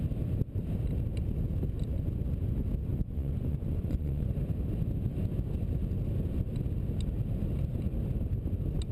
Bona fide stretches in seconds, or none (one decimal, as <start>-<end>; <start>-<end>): 0.0-2.9; 4.3-8.9